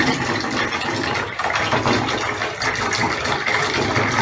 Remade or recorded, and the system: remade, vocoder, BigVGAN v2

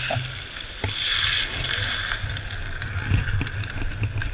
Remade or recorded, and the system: recorded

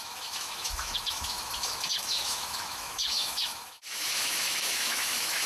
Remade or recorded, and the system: remade, autoencoder, DAC-VAE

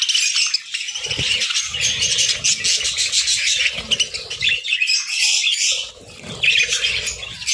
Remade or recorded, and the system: recorded